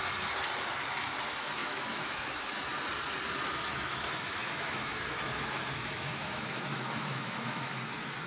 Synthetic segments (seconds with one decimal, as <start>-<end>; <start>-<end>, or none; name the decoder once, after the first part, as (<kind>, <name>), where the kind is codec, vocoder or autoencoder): 1.6-2.7 (autoencoder, DAC-VAE); 3.7-7.7